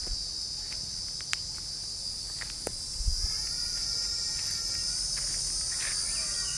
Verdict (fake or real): real